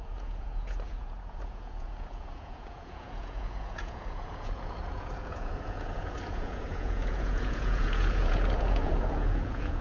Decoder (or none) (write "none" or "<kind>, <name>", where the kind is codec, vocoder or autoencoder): vocoder, Vocos